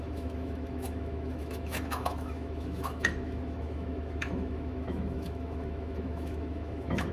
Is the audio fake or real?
fake